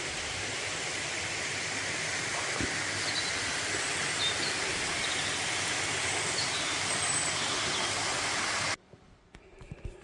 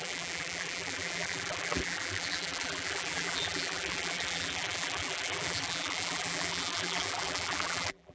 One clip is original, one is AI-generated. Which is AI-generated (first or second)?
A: second